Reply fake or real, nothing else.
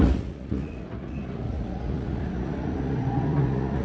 fake